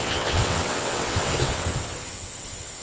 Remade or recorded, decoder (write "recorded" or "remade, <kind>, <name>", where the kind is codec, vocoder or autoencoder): remade, vocoder, WaveNeXt